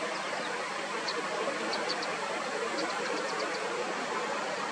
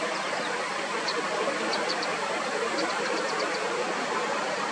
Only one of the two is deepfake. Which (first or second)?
second